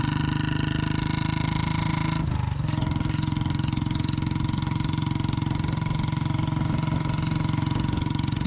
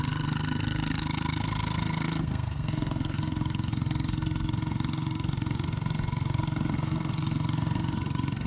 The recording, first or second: first